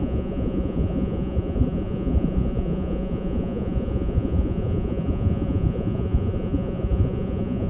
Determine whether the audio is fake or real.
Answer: fake